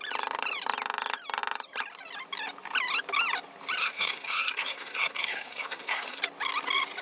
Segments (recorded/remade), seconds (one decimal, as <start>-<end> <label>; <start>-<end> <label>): 0.0-3.8 recorded; 3.8-6.2 remade; 6.2-7.0 recorded